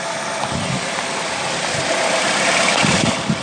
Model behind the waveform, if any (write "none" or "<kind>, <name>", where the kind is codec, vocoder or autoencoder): none